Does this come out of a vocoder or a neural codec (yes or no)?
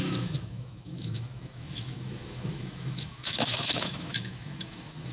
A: yes